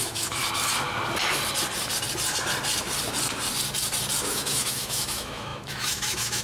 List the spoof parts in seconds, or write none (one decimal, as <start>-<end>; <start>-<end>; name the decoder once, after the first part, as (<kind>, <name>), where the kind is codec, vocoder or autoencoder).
0.0-0.4 (autoencoder, DAC-VAE); 4.2-6.4